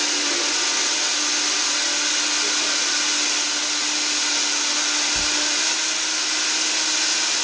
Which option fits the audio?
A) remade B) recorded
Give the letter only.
B